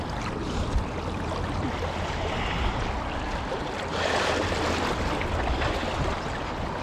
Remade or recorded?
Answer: recorded